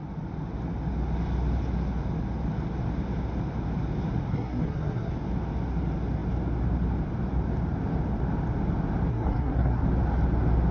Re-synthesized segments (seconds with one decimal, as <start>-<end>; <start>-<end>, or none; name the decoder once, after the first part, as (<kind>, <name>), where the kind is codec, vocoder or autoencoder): 4.3-5.1 (codec, SNAC); 9.1-9.8